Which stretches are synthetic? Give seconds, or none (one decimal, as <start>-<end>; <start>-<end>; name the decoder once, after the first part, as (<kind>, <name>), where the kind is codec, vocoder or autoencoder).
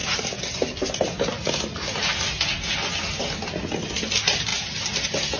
none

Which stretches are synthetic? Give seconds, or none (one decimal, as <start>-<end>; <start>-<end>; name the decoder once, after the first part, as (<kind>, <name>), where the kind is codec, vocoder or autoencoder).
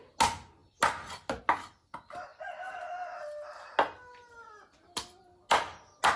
none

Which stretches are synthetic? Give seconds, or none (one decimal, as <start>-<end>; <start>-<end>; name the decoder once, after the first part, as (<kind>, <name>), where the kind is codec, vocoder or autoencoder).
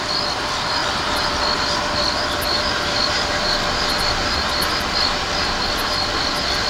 none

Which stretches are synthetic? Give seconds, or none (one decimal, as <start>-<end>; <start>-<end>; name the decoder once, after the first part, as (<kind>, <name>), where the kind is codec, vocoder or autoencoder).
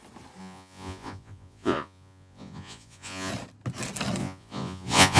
0.4-3.3 (vocoder, Vocos); 4.2-5.2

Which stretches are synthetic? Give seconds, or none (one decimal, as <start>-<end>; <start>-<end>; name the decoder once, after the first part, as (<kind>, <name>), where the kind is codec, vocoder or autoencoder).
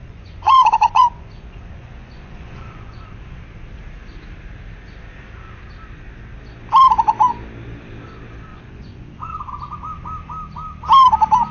0.0-3.4 (vocoder, Vocos); 8.5-9.5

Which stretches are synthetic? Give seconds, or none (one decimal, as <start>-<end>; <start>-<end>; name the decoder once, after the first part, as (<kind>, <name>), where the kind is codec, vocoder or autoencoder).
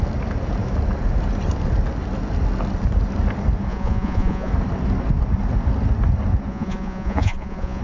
3.7-4.5 (vocoder, Vocos); 6.5-7.8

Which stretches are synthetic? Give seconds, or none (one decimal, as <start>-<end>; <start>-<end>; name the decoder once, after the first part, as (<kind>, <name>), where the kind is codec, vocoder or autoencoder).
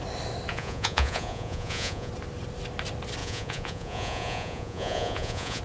0.5-2.1 (vocoder, Vocos); 3.2-5.6